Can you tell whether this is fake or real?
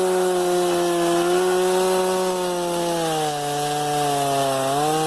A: real